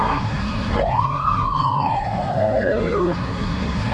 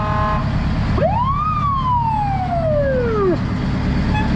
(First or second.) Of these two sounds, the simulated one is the first